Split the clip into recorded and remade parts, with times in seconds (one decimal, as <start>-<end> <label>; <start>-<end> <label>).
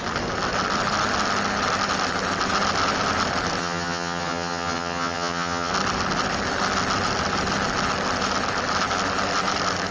0.0-3.6 recorded; 3.6-5.7 remade; 5.7-9.9 recorded